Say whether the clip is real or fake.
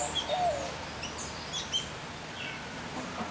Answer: real